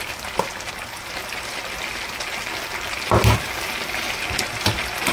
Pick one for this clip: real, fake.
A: real